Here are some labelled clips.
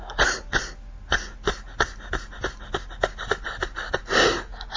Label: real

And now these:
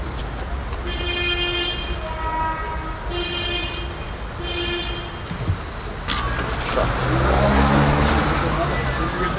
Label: real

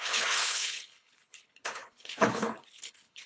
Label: fake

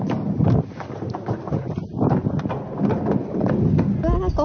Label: real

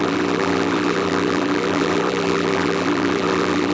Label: fake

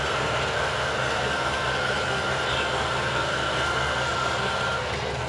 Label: fake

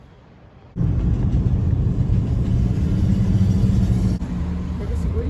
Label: real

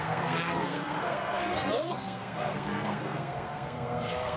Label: fake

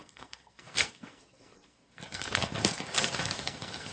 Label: fake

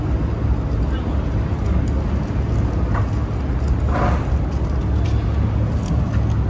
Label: real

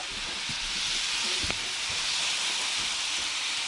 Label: real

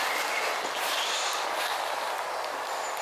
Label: real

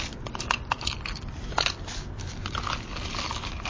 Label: real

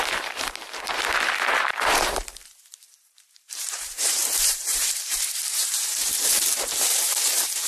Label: fake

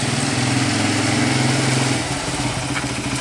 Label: real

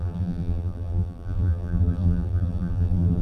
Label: fake